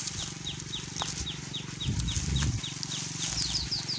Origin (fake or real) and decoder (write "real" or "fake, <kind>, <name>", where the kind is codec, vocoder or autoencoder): real